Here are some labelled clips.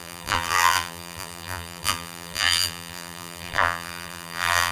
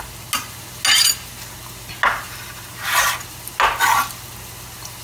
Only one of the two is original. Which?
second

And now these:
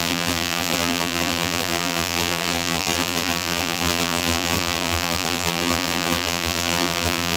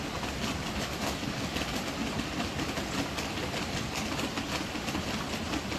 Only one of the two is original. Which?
second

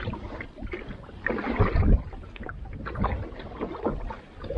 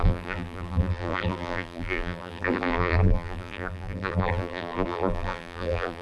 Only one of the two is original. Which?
first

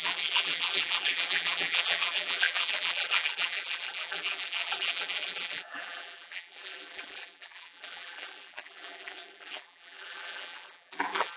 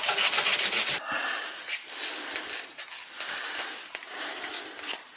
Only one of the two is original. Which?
second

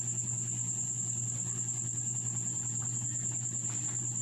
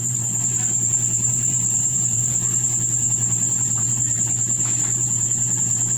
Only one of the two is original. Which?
first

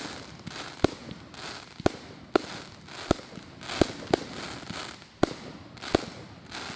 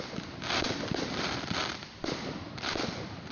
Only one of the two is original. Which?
first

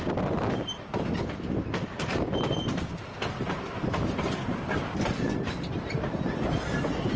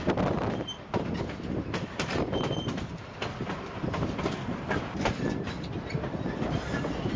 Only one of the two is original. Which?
first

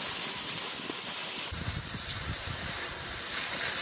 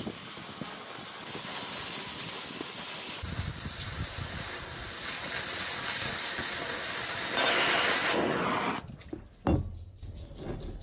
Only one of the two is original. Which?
second